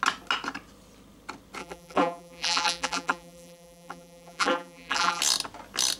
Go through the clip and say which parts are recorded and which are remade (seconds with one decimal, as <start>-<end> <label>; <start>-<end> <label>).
0.0-1.6 recorded; 1.6-5.2 remade; 5.2-6.0 recorded